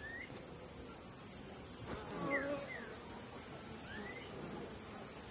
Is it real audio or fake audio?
real